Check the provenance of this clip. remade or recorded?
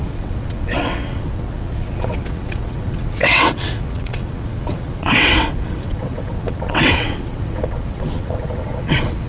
remade